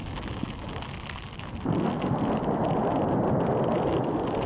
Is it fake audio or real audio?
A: real